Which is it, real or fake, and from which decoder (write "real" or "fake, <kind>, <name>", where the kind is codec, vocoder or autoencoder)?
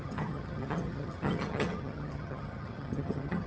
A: fake, vocoder, HiFi-GAN